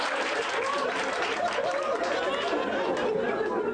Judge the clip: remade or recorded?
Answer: recorded